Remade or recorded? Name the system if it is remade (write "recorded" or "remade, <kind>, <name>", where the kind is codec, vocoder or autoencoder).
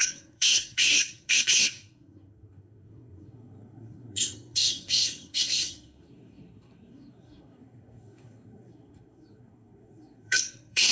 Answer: remade, codec, SNAC